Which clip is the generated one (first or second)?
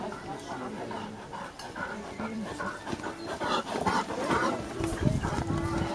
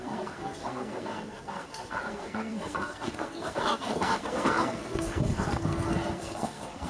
second